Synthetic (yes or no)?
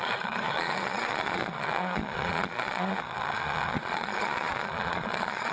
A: yes